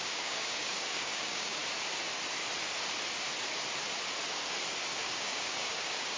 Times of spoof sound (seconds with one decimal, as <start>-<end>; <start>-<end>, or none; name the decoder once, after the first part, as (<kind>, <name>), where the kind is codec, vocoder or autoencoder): 0.0-1.6 (codec, DAC); 5.0-6.2